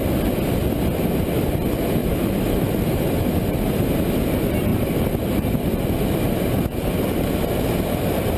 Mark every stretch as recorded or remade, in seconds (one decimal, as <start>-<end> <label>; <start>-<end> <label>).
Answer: 0.0-2.0 recorded; 2.0-3.9 remade; 3.9-4.7 recorded; 4.7-5.8 remade; 5.8-8.4 recorded